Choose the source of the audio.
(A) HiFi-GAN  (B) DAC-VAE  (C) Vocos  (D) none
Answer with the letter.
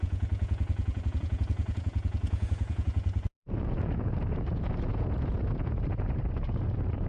C